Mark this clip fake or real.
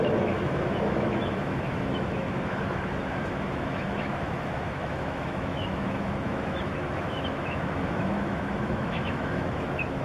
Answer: fake